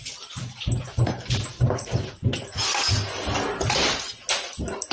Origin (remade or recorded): recorded